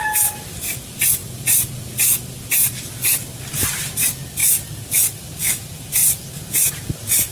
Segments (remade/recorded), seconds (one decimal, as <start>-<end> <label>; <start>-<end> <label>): 0.0-7.3 recorded